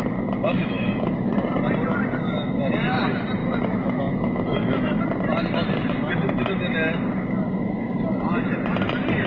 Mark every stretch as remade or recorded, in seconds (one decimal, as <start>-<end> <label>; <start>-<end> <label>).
0.0-0.6 recorded; 0.6-1.3 remade; 1.3-3.4 recorded; 3.4-5.0 remade; 5.0-9.3 recorded